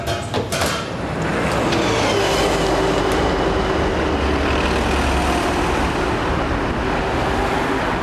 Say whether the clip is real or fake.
real